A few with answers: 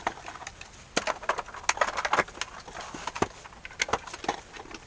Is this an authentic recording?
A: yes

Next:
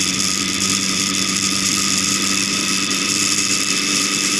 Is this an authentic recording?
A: no